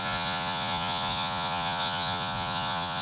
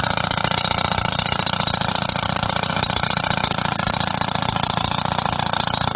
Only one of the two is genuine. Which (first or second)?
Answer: second